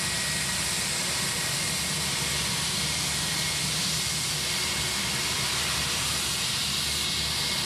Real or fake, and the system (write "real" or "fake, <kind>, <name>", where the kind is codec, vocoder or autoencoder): real